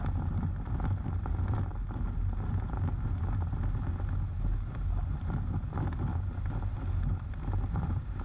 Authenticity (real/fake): real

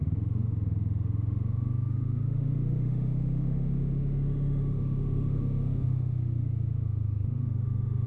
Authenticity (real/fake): fake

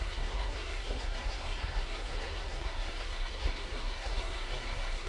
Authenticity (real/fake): fake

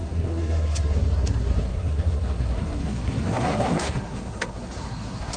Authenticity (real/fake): fake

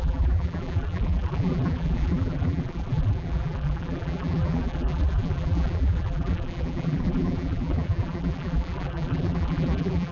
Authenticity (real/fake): fake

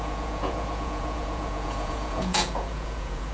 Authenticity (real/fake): fake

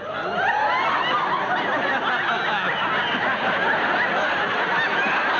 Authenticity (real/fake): real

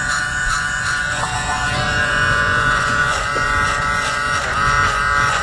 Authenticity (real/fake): fake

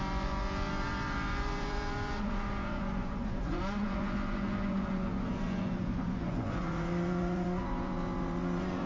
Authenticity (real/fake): fake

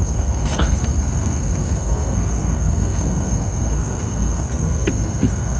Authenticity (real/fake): fake